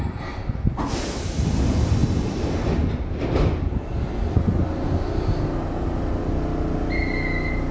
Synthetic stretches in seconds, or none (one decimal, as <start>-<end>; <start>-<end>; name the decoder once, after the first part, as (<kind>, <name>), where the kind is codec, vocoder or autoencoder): none